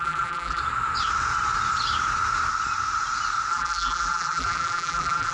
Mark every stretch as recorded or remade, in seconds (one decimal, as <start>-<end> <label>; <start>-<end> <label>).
0.0-0.6 remade; 0.6-3.5 recorded; 3.5-5.3 remade